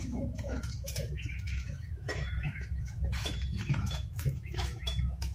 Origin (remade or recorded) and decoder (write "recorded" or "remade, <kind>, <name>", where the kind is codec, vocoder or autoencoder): remade, autoencoder, DAC-VAE